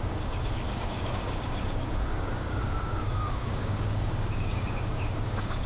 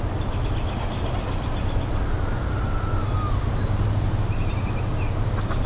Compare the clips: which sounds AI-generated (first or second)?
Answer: first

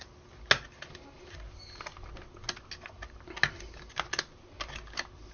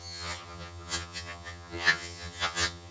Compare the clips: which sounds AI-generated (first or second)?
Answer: second